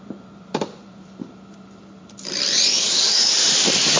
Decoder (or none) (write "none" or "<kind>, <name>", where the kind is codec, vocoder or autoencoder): vocoder, BigVGAN v2